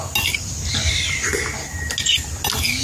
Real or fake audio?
real